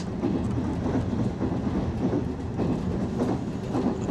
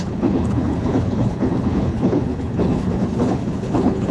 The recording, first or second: first